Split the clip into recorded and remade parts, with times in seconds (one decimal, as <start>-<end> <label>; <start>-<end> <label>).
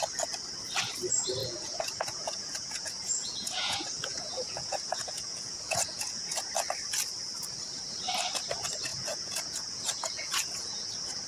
0.0-1.4 recorded; 1.4-6.5 remade; 6.5-8.9 recorded; 8.9-10.9 remade; 10.9-11.3 recorded